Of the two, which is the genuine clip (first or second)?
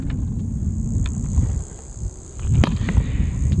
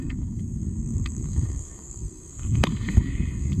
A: first